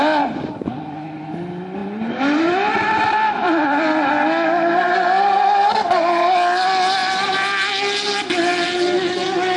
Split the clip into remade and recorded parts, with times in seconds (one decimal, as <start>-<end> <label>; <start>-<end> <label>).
0.0-1.8 recorded; 1.8-4.1 remade; 4.1-7.0 recorded; 7.0-7.7 remade; 7.7-9.6 recorded